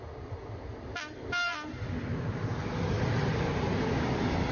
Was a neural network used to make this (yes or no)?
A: no